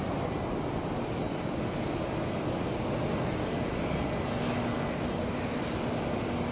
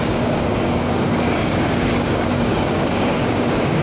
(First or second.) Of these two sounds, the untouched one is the first